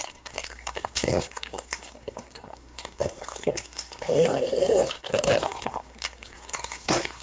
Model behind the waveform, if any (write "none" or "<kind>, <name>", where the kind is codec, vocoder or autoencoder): codec, SNAC